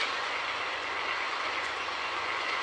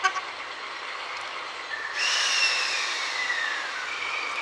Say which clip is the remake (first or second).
first